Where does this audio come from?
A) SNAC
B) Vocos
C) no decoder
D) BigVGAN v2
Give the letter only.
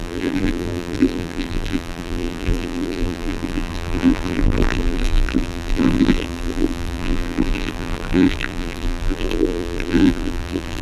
D